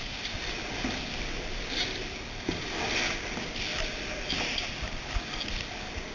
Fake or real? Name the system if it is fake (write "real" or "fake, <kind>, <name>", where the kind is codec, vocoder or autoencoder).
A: real